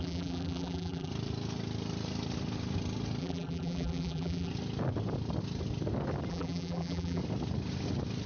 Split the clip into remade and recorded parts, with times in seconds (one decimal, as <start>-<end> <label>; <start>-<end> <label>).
0.0-1.1 remade; 1.1-3.2 recorded; 3.2-4.5 remade; 4.5-6.3 recorded; 6.3-7.2 remade; 7.2-8.3 recorded